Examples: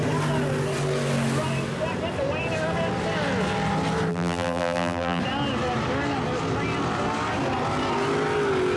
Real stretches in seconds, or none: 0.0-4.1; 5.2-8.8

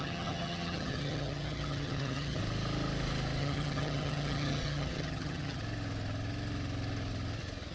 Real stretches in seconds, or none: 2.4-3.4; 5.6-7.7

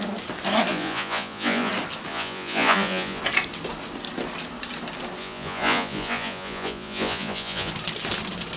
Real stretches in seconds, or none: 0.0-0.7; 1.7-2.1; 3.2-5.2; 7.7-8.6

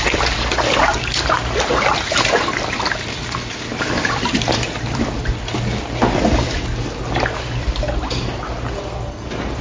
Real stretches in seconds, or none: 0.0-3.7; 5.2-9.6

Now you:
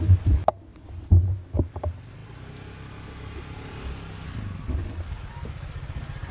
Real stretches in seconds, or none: 0.0-6.3